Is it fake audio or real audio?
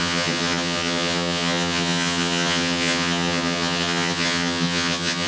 fake